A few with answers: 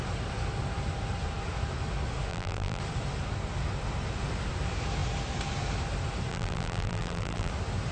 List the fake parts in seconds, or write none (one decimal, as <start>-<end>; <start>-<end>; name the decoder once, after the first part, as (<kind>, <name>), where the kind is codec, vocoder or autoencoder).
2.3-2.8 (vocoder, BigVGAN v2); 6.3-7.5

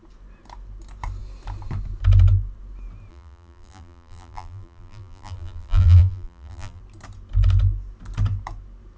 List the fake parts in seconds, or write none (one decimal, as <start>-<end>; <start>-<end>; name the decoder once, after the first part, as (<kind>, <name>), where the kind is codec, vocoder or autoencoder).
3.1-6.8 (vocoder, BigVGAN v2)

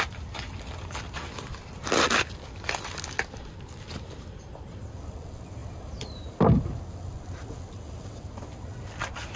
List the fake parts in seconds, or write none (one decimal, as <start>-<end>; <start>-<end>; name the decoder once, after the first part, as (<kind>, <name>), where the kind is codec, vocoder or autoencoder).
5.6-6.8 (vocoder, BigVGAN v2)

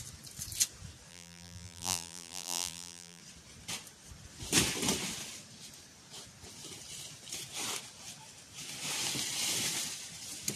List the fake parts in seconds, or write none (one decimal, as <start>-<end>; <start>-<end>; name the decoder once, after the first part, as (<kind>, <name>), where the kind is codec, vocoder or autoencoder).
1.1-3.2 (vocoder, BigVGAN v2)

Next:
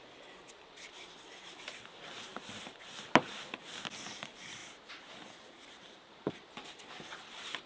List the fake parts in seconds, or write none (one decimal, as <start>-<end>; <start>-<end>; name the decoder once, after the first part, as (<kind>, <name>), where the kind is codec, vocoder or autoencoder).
4.6-6.5 (vocoder, BigVGAN v2)

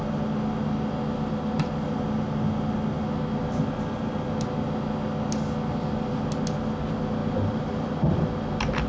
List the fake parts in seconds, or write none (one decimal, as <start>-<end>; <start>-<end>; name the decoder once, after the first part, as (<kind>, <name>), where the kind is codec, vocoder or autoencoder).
7.2-8.3 (vocoder, BigVGAN v2)